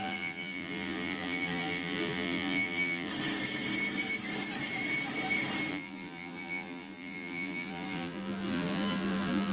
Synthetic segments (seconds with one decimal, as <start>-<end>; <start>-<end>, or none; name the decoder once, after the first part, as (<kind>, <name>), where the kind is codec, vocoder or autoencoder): 0.0-3.1 (vocoder, BigVGAN v2); 5.7-9.5